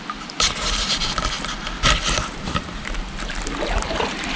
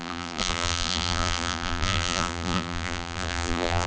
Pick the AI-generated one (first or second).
second